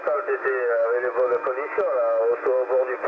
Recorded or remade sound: recorded